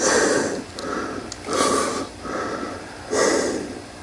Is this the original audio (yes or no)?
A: yes